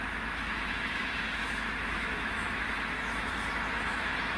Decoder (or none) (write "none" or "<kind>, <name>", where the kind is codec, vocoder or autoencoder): autoencoder, DAC-VAE